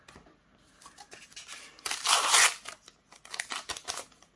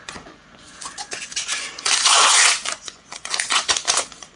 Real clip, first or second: first